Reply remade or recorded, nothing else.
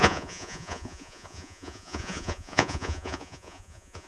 remade